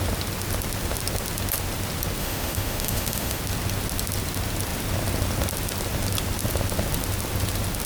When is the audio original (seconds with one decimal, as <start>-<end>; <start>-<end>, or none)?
0.0-2.2; 3.4-7.9